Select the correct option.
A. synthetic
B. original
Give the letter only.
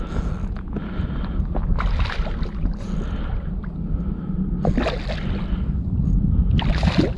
B